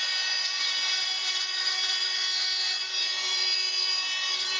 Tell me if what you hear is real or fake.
fake